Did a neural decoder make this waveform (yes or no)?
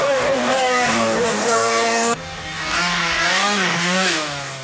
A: yes